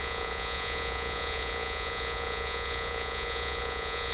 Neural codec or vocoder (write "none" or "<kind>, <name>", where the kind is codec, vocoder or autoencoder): vocoder, Vocos